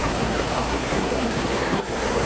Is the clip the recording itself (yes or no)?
no